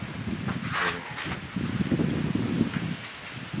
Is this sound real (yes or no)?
yes